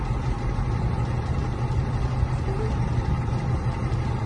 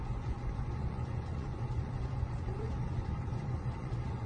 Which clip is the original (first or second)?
first